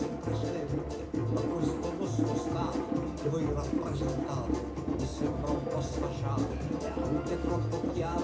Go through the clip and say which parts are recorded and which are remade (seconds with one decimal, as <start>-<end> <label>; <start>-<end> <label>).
0.0-8.2 recorded